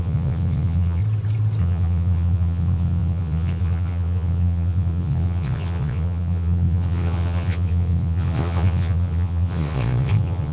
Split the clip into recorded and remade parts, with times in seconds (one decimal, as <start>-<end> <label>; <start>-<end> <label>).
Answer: 0.0-1.0 remade; 1.0-1.6 recorded; 1.6-10.5 remade